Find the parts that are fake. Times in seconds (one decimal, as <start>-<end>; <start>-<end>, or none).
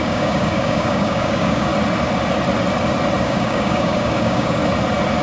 0.0-1.7; 3.2-4.6